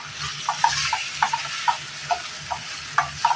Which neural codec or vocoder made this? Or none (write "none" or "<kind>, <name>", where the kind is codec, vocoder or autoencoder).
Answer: none